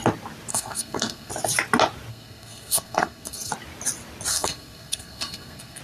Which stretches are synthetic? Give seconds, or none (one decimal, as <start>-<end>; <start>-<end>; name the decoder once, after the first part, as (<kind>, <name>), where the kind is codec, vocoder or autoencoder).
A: 0.5-1.3 (codec, SNAC); 2.1-3.5; 4.3-5.8

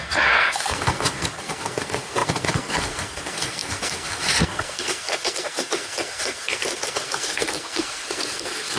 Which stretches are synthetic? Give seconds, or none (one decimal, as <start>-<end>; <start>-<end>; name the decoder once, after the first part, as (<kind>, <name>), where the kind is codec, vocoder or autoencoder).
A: 0.0-8.8 (codec, SNAC)

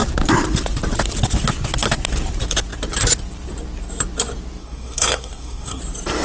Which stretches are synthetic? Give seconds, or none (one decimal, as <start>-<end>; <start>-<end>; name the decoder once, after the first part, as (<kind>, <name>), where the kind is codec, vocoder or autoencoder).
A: 4.6-5.8 (codec, SNAC)

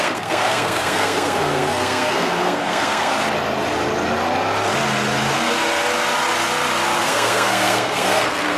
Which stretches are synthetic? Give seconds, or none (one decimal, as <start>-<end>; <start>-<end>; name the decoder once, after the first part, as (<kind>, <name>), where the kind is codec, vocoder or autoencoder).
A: 0.0-3.1 (codec, SNAC); 7.0-8.6

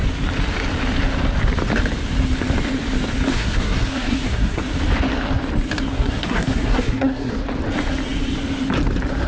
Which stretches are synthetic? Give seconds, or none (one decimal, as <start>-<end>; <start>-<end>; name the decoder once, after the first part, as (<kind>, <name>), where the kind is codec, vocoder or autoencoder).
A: 3.3-4.6 (codec, SNAC); 5.9-7.3

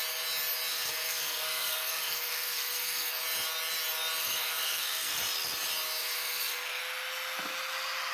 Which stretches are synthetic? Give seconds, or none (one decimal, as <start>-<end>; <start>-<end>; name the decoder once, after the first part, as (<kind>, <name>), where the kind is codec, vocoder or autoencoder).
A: 0.7-3.2 (codec, SNAC); 4.2-5.2; 6.0-6.8